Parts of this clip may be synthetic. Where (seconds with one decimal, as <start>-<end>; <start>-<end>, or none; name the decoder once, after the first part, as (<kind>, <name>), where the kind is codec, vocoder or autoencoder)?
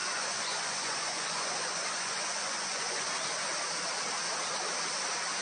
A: 0.0-3.1 (vocoder, Vocos)